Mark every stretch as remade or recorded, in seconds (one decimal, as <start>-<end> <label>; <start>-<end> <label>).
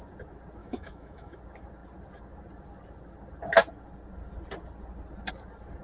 0.0-0.6 recorded; 0.6-1.4 remade; 1.4-5.8 recorded